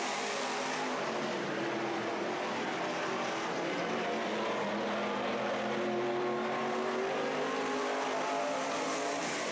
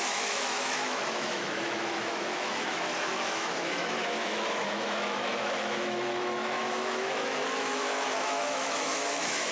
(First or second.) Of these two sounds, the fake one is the second